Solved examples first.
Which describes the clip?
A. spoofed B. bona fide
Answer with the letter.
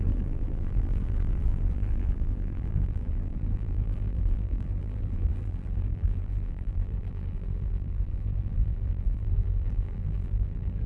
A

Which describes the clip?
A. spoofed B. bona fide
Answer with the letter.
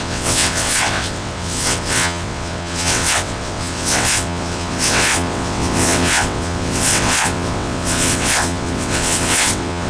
A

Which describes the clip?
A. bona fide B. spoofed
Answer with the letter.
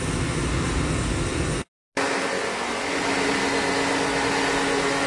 A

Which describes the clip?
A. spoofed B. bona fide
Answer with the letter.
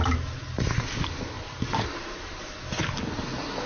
B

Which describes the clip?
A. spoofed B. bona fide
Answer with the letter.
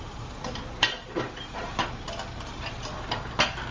B